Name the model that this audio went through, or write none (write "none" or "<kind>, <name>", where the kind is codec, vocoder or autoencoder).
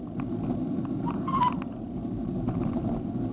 none